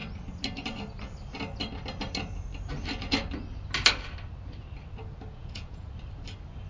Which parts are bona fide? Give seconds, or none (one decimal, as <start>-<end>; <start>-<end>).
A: 0.0-5.3; 5.9-6.7